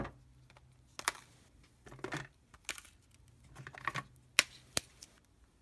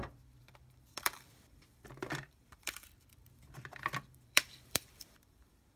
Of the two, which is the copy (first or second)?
second